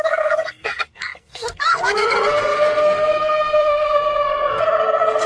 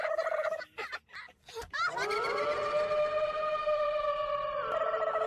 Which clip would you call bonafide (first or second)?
second